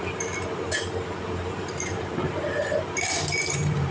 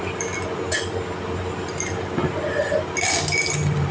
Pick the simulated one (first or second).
first